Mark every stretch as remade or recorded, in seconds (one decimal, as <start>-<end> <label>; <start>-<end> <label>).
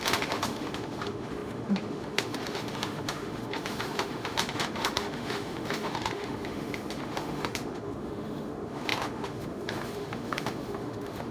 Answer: 0.0-11.3 remade